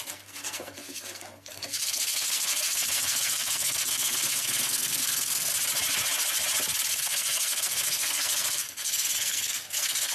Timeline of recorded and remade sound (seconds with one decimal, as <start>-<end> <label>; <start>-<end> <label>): 0.0-5.5 remade; 5.5-6.9 recorded; 6.9-10.1 remade